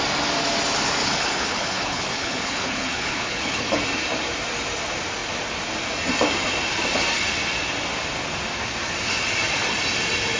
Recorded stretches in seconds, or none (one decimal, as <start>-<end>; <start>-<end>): 0.0-1.0; 3.8-10.4